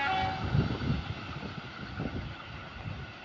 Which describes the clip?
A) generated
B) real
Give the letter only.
B